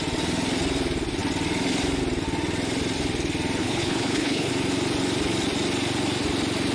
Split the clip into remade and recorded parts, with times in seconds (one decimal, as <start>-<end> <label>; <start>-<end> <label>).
0.0-3.6 recorded; 3.6-4.5 remade; 4.5-6.7 recorded